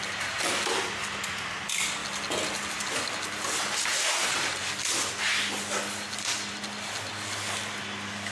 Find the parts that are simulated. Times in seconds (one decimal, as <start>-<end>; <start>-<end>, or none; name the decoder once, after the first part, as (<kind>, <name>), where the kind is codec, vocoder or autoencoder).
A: none